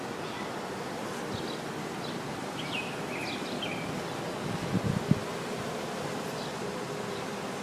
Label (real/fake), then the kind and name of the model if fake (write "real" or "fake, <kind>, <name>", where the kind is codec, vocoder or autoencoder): real